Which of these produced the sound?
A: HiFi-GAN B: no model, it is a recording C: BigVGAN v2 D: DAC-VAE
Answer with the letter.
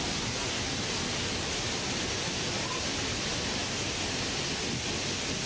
B